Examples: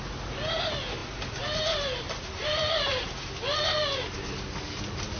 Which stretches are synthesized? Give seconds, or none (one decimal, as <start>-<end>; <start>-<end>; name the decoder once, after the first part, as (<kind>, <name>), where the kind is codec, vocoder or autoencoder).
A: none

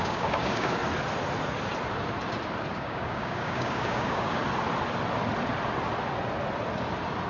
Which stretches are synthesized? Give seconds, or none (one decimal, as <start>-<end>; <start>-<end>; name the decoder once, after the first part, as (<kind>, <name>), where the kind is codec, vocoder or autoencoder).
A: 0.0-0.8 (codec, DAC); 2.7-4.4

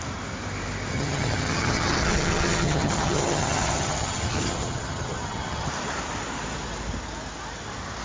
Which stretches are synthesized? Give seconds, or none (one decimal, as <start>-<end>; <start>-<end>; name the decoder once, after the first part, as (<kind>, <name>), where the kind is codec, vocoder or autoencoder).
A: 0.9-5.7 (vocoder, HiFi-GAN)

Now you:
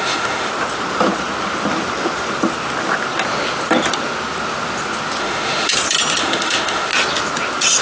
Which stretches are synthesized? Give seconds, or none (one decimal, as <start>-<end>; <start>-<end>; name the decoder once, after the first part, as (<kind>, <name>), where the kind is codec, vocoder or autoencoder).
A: 0.0-0.5 (autoencoder, DAC-VAE); 5.2-5.7; 6.2-6.9

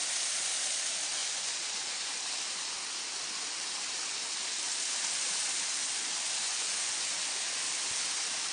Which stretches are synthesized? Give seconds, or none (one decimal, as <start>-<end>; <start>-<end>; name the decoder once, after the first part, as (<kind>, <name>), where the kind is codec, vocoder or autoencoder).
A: 1.2-2.1 (vocoder, Vocos); 6.4-7.4

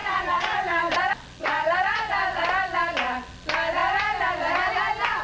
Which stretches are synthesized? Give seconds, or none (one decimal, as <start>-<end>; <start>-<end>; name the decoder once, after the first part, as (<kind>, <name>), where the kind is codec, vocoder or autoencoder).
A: 0.0-0.9 (vocoder, Vocos); 1.4-2.0